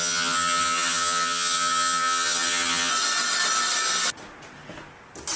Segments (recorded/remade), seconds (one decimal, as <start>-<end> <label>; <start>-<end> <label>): 0.0-2.9 remade; 2.9-5.4 recorded